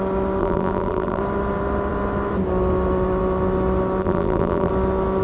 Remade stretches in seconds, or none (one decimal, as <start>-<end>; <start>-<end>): 0.4-1.2; 4.0-4.7